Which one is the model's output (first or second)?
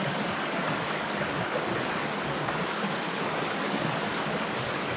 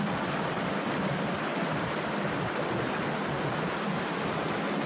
first